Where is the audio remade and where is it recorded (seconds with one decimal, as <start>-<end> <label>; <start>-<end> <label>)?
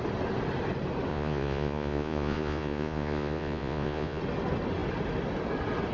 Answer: 0.0-1.1 recorded; 1.1-4.2 remade; 4.2-5.9 recorded